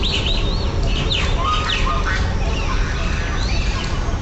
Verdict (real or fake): real